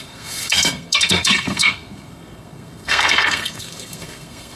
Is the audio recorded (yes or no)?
no